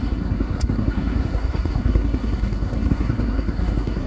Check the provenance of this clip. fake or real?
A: fake